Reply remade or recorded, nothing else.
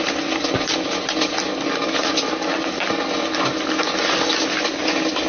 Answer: recorded